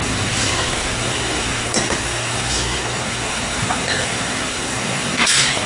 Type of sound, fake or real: fake